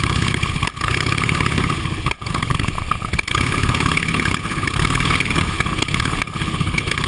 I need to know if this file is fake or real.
fake